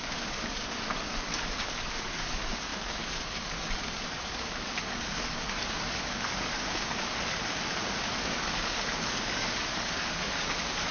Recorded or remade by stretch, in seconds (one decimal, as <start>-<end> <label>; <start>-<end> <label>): 0.0-10.9 remade